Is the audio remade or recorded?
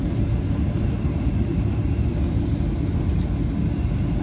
recorded